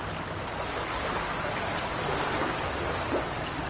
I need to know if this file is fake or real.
real